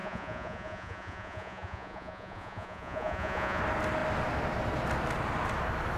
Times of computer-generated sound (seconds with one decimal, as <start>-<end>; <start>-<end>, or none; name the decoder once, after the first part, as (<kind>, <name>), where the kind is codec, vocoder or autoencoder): 0.0-3.6 (vocoder, Vocos)